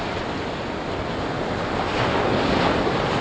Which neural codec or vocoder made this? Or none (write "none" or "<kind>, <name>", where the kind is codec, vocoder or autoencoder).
none